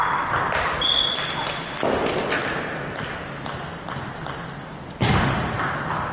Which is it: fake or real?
real